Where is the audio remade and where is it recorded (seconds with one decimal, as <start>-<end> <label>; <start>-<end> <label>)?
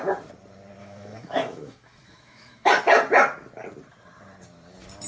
0.0-0.8 recorded; 0.8-2.7 remade; 2.7-5.1 recorded